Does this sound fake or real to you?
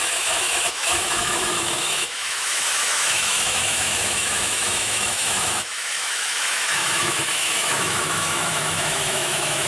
fake